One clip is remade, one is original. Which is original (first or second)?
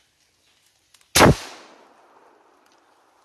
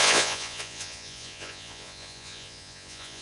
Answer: first